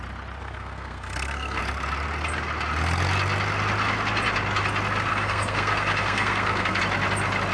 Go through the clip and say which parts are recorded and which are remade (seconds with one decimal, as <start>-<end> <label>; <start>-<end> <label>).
0.0-0.4 recorded; 0.4-1.6 remade; 1.6-5.1 recorded; 5.1-6.8 remade; 6.8-7.5 recorded